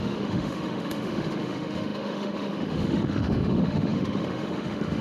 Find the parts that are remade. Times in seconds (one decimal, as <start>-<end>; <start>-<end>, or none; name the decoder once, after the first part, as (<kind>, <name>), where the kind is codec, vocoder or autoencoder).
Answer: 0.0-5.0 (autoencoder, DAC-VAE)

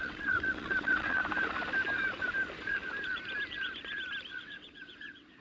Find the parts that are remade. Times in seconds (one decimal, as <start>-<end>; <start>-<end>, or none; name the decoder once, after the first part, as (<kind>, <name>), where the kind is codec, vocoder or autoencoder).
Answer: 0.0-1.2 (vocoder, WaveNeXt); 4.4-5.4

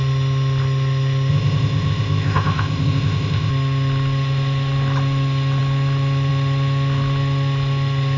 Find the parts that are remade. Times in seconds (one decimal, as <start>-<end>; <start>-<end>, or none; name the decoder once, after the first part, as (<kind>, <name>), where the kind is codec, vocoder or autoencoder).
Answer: 1.3-3.5 (codec, ZipCodec)